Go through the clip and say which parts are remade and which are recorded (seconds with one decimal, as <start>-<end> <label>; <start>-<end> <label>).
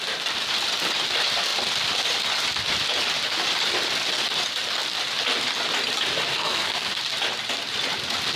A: 0.0-6.3 recorded; 6.3-6.9 remade; 6.9-8.4 recorded